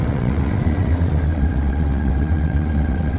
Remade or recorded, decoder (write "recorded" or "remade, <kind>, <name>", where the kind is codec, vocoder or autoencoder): remade, vocoder, WaveNeXt